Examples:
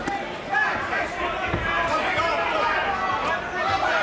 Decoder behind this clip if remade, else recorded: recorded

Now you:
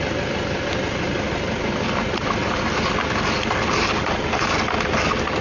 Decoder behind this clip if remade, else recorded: recorded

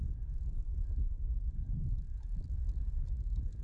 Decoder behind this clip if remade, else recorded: recorded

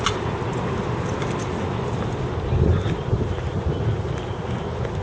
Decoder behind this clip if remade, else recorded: recorded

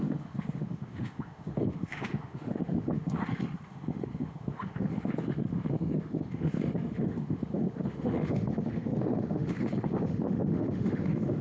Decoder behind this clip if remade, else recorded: remade, autoencoder, DAC-VAE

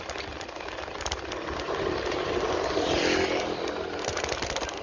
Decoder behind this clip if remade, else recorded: recorded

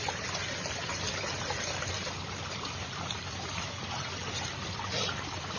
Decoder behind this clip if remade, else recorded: remade, vocoder, BigVGAN v2